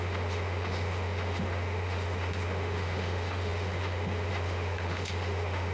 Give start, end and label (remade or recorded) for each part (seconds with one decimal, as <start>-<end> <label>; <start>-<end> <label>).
0.0-5.7 remade